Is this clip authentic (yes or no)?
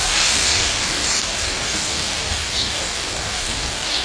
no